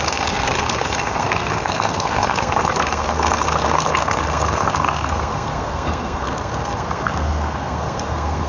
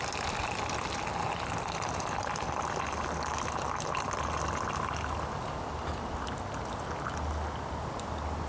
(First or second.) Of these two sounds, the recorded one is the second